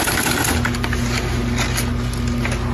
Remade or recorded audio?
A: recorded